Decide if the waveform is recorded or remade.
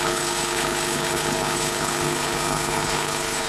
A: remade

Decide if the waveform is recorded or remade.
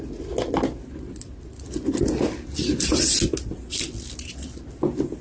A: recorded